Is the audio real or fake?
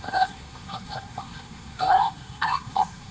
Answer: fake